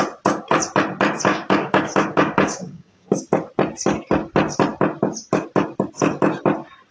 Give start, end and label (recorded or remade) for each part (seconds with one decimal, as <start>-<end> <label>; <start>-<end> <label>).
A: 0.0-1.3 recorded; 1.3-3.2 remade; 3.2-6.9 recorded